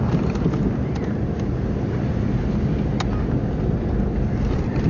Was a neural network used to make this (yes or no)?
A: no